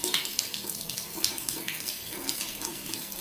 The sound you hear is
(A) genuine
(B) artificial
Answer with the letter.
B